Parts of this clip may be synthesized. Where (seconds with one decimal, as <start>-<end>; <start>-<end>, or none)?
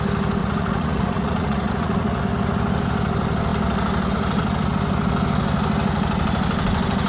0.4-2.2